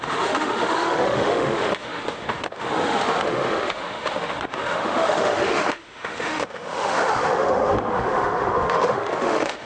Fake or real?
fake